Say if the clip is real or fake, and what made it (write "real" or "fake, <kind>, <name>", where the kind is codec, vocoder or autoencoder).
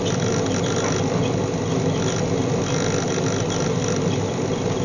real